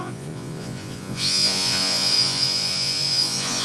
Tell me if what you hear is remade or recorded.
remade